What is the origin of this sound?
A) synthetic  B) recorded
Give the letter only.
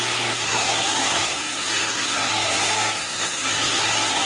A